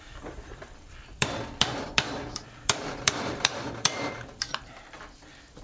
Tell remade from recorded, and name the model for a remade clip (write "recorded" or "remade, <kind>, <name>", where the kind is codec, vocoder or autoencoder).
remade, vocoder, BigVGAN v2